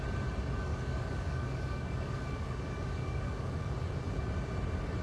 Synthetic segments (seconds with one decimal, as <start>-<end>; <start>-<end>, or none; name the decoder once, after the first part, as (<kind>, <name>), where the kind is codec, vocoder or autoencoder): 0.7-3.7 (codec, DAC)

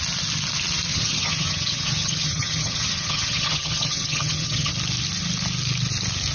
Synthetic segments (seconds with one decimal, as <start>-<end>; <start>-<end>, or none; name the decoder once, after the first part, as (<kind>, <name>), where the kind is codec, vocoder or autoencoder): 0.9-4.7 (vocoder, HiFi-GAN)

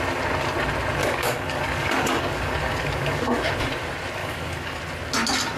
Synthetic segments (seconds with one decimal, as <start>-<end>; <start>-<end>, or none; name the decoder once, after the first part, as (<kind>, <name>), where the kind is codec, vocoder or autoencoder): 1.0-3.5 (codec, DAC); 4.2-4.8

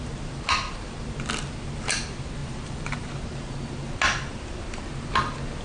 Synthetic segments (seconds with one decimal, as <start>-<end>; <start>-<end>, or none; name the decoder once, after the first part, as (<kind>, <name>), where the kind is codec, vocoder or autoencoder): 2.4-3.1 (vocoder, BigVGAN v2)

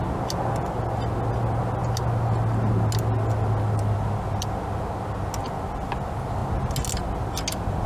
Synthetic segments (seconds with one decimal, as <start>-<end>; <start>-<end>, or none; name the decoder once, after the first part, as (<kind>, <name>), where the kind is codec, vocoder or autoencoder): none